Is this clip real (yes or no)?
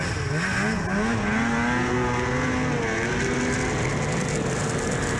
yes